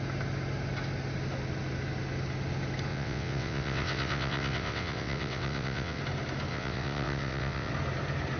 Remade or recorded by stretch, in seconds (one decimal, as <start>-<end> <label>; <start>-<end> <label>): 0.0-2.9 recorded; 2.9-6.0 remade; 6.0-6.5 recorded; 6.5-7.7 remade; 7.7-8.4 recorded